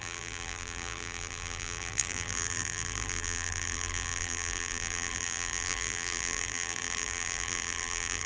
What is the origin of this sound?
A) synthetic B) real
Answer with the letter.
A